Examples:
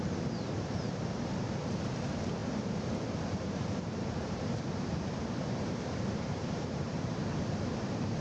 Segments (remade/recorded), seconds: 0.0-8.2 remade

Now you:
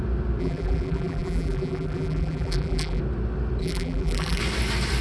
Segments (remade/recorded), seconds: 0.0-0.4 recorded; 0.4-3.0 remade; 3.0-3.6 recorded; 3.6-4.4 remade; 4.4-5.0 recorded

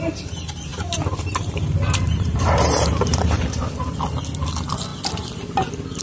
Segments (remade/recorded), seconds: 0.0-0.7 recorded; 0.7-3.6 remade; 3.6-6.0 recorded

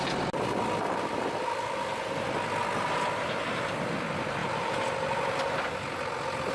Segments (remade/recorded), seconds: 0.0-4.4 recorded; 4.4-5.7 remade; 5.7-6.5 recorded

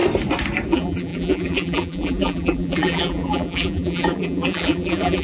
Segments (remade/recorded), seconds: 0.0-0.7 recorded; 0.7-5.2 remade

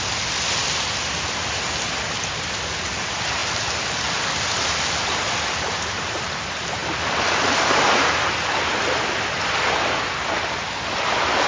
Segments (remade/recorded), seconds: 0.0-11.5 recorded

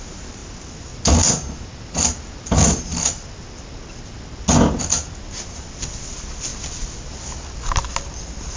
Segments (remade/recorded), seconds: 0.0-8.6 recorded